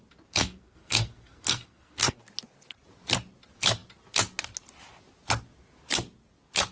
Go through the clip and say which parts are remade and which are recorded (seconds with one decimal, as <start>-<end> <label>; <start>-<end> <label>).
0.0-0.4 recorded; 0.4-2.2 remade; 2.2-6.7 recorded